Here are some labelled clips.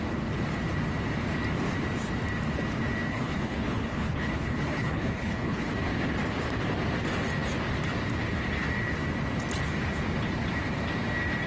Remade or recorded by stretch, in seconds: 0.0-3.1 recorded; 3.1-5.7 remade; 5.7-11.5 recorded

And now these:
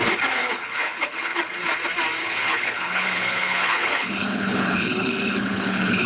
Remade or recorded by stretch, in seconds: 0.0-0.4 recorded; 0.4-1.6 remade; 1.6-2.2 recorded; 2.2-6.1 remade

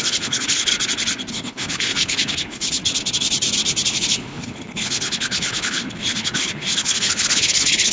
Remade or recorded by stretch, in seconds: 0.0-0.7 remade; 0.7-1.3 recorded; 1.3-2.8 remade; 2.8-3.9 recorded; 3.9-7.9 remade

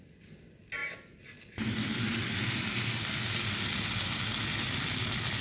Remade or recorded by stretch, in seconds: 0.0-5.4 recorded

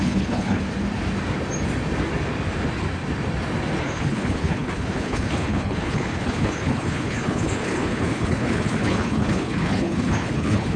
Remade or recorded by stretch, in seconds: 0.0-0.6 remade; 0.6-3.8 recorded; 3.8-10.8 remade

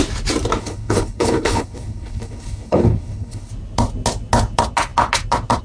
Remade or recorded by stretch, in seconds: 0.0-0.6 recorded; 0.6-3.5 remade; 3.5-5.6 recorded

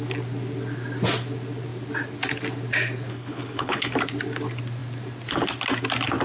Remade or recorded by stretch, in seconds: 0.0-3.1 recorded; 3.1-3.9 remade; 3.9-6.2 recorded

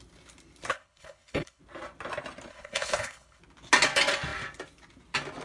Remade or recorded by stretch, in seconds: 0.0-0.7 recorded; 0.7-1.6 remade; 1.6-2.5 recorded; 2.5-3.4 remade; 3.4-5.4 recorded